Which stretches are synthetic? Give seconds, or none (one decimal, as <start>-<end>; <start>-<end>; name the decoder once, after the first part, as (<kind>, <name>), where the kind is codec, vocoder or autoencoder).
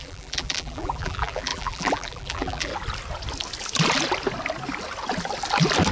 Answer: 0.0-2.7 (vocoder, BigVGAN v2)